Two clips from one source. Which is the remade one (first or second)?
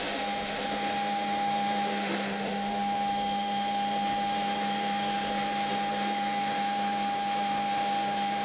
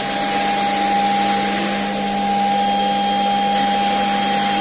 first